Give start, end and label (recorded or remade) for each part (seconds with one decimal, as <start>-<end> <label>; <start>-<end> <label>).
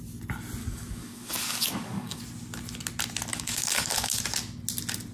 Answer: 0.0-0.6 recorded; 0.6-2.2 remade; 2.2-3.3 recorded; 3.3-4.2 remade; 4.2-5.1 recorded